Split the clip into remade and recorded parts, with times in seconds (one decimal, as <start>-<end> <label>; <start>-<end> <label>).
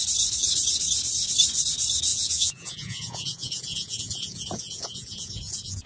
0.0-2.1 recorded; 2.1-5.9 remade